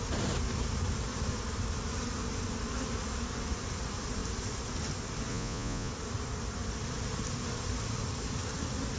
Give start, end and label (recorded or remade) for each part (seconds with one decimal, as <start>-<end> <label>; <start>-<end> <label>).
0.0-5.3 recorded; 5.3-5.9 remade; 5.9-9.0 recorded